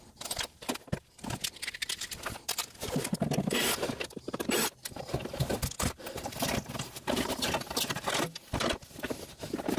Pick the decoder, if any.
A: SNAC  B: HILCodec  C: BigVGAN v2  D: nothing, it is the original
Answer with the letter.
D